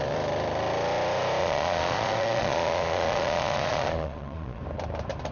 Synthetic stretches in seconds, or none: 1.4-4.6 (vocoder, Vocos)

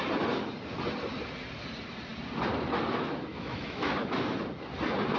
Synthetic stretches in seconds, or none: 3.3-3.9 (autoencoder, DAC-VAE)